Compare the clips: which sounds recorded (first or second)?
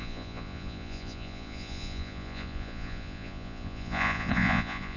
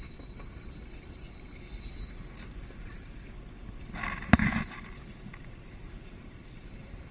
second